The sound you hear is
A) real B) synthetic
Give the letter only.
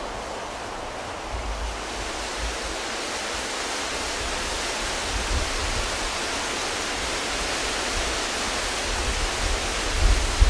A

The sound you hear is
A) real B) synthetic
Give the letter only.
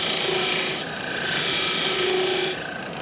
B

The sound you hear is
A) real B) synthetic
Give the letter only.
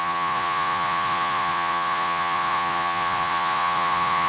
B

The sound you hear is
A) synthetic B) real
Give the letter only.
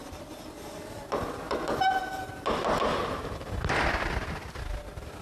B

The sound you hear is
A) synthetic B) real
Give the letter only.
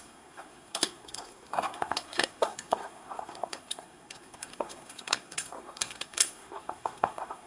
A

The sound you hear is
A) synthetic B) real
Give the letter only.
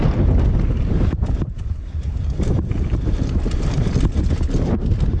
B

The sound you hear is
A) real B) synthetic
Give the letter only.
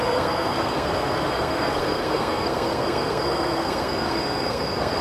B